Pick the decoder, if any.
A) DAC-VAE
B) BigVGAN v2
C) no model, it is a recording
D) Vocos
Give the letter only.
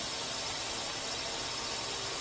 C